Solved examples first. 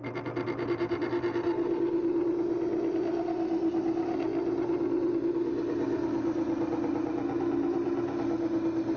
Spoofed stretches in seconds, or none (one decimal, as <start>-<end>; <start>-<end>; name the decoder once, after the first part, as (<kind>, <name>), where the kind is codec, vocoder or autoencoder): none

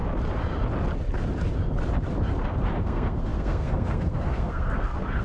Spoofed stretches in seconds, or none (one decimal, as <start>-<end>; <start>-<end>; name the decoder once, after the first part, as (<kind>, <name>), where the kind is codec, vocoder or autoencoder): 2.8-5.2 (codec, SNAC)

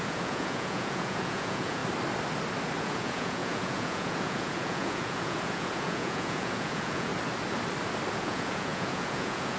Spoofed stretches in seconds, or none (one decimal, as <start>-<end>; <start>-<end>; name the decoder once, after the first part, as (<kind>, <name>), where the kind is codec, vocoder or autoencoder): 0.0-1.8 (vocoder, Vocos); 2.8-7.1; 8.1-9.6

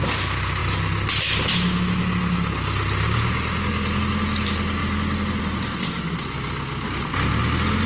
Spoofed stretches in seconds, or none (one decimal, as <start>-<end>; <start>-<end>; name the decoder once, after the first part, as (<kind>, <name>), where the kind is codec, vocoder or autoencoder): none

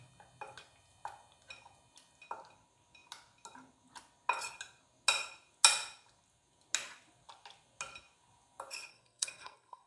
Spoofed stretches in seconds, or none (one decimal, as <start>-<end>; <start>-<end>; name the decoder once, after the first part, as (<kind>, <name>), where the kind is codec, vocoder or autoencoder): 8.9-9.9 (codec, SNAC)